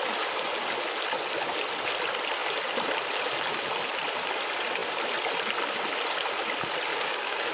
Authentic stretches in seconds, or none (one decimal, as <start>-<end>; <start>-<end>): 0.0-6.9